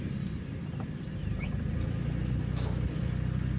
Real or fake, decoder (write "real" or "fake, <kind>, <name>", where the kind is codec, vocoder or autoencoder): real